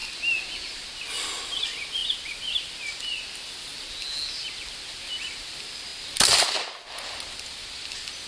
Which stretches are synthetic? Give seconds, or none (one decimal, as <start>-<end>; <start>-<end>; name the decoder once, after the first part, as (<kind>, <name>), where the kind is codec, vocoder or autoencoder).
none